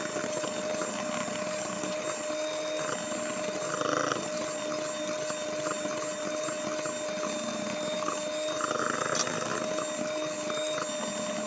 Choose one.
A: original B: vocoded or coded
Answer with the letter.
A